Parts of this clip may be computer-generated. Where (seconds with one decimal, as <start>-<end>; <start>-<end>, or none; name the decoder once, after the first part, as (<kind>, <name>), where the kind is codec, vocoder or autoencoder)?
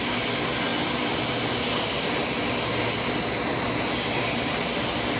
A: none